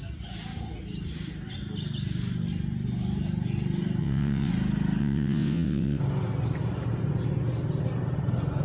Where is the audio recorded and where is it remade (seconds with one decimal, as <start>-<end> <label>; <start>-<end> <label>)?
0.0-4.0 recorded; 4.0-4.5 remade; 4.5-5.0 recorded; 5.0-6.0 remade; 6.0-8.6 recorded